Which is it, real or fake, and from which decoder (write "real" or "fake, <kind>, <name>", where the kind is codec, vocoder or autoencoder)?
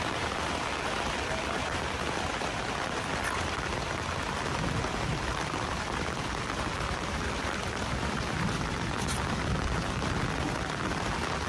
fake, vocoder, BigVGAN v2